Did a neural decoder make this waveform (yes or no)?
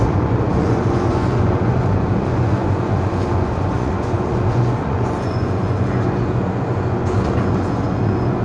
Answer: yes